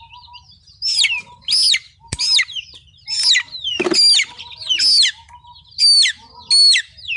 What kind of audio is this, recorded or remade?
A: recorded